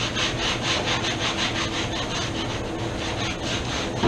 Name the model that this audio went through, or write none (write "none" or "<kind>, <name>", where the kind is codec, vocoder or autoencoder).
none